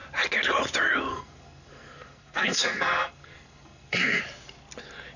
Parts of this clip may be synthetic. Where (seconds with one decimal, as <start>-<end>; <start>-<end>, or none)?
1.1-4.2